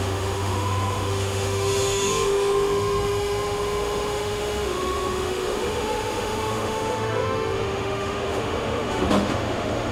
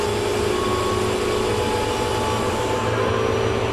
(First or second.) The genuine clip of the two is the second